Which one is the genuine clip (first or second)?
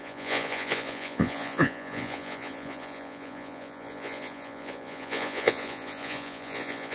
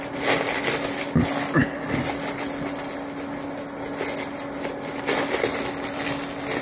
second